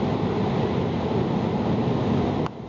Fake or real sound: real